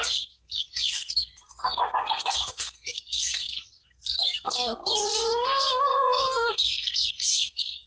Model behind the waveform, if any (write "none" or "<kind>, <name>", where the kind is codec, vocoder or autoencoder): codec, SNAC